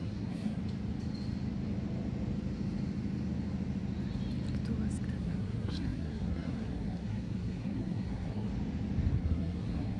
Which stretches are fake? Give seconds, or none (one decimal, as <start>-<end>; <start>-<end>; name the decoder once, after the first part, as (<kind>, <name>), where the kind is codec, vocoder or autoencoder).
0.0-0.6 (codec, SNAC); 5.2-8.5; 9.1-10.0